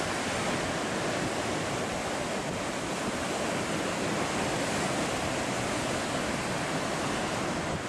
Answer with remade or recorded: recorded